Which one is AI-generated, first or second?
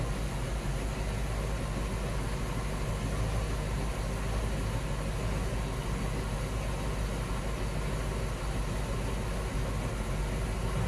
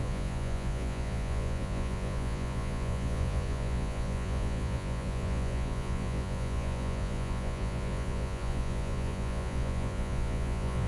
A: second